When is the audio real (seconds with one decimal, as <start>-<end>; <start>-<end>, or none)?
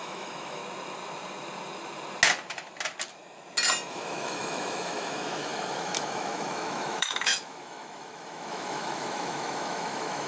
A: 0.6-3.9